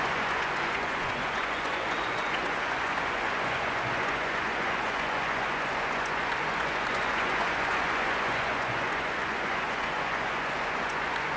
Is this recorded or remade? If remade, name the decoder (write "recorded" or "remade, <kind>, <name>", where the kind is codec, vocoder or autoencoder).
remade, vocoder, Vocos